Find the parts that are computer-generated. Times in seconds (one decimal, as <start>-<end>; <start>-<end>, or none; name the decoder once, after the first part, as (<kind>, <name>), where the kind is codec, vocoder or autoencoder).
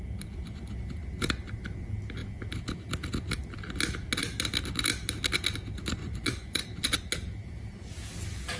6.0-6.6 (vocoder, Vocos)